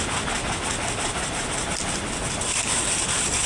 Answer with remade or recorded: recorded